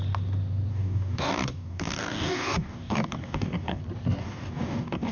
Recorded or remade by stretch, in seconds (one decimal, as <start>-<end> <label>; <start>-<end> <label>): 0.0-0.7 recorded; 0.7-3.8 remade; 3.8-4.2 recorded; 4.2-5.1 remade